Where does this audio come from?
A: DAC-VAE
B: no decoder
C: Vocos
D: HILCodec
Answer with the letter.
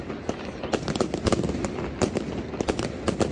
B